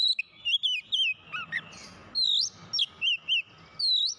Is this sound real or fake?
real